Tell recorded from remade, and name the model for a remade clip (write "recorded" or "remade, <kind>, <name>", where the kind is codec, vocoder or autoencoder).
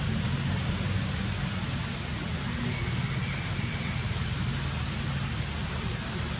recorded